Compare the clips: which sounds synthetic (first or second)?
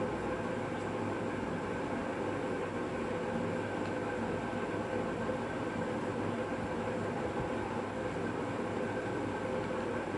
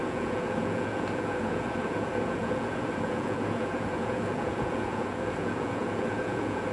second